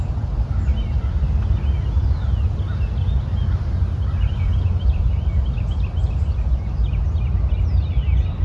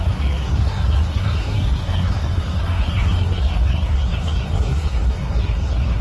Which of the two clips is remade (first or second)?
second